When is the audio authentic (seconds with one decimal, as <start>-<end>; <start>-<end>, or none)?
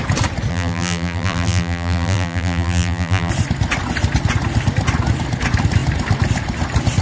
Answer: 0.0-0.5; 3.3-7.0